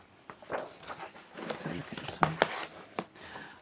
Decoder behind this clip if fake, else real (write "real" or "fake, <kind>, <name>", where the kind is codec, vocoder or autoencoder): real